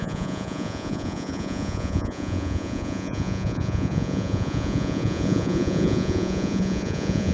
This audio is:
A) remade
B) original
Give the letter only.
A